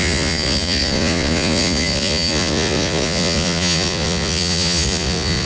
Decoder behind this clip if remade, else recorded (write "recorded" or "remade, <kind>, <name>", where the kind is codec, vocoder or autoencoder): remade, vocoder, Vocos